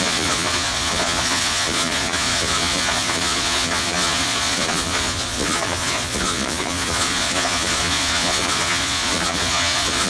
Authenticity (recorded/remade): remade